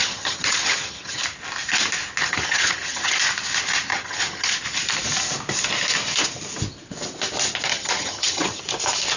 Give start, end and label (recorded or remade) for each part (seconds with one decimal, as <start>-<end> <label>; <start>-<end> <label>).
0.0-1.2 remade; 1.2-2.2 recorded; 2.2-3.2 remade; 3.2-3.9 recorded; 3.9-4.5 remade; 4.5-7.7 recorded; 7.7-8.6 remade; 8.6-9.2 recorded